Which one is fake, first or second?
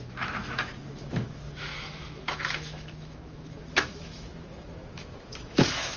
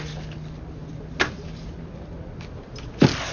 first